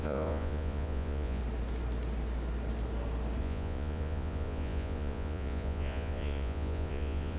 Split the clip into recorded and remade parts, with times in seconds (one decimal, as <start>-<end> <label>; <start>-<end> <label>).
0.0-1.4 remade; 1.4-3.4 recorded; 3.4-7.4 remade